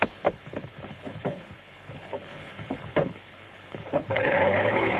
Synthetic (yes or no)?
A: yes